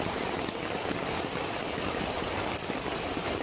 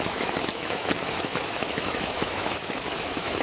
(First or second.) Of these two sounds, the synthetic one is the second